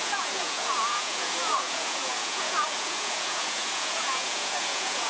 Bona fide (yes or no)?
no